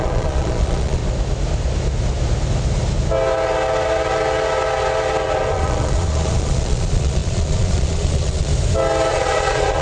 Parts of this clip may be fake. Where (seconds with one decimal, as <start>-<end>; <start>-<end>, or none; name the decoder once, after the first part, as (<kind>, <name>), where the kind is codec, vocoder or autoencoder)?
0.0-1.0 (vocoder, Vocos); 5.5-8.5; 9.1-9.8